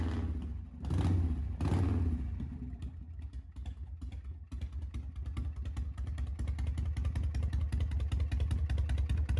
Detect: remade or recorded recorded